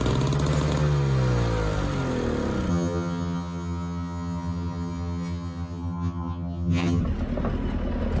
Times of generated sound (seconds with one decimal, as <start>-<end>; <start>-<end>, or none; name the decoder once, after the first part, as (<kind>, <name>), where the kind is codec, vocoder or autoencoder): 2.7-7.0 (vocoder, HiFi-GAN)